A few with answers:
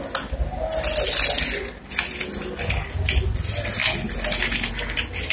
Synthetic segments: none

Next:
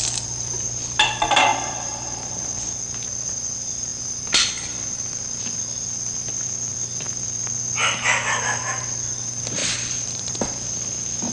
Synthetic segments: 1.5-2.3 (vocoder, BigVGAN v2); 9.6-10.3

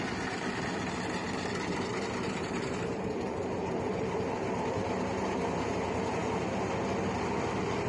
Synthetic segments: 1.2-4.8 (vocoder, BigVGAN v2)